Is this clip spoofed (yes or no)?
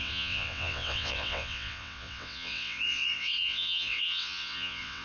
yes